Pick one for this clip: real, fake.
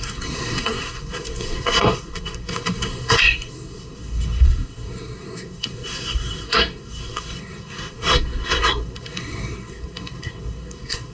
fake